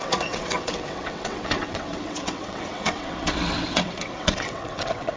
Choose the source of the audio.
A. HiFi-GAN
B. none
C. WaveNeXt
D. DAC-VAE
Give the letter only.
C